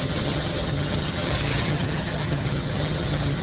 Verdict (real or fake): fake